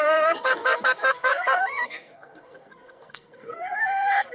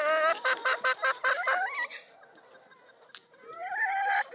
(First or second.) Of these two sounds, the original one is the second